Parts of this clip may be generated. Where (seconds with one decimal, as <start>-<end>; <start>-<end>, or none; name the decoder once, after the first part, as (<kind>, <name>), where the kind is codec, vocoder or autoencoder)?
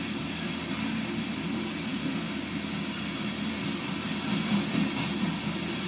none